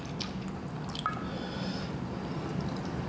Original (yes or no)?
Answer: yes